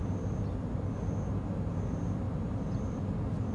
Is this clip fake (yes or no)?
no